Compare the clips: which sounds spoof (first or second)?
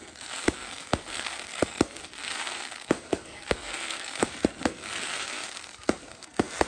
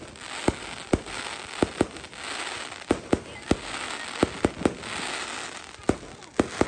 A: first